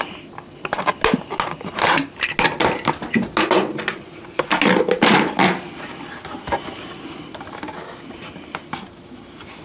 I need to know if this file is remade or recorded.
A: recorded